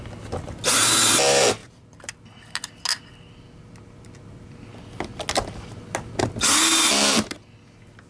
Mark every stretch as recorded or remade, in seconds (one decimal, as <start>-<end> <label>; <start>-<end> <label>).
0.0-8.1 recorded